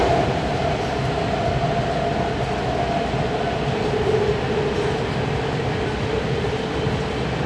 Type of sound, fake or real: real